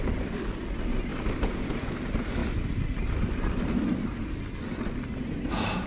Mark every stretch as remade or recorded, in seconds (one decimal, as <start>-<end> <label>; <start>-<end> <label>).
0.0-5.9 recorded